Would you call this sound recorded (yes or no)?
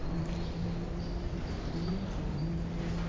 yes